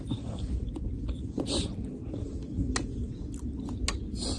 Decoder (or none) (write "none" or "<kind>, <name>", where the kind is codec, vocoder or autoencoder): none